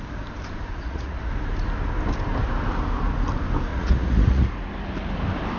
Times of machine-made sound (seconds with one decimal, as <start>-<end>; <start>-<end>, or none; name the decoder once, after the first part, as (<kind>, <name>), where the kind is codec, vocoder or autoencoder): 0.7-1.3 (vocoder, Vocos); 3.7-4.5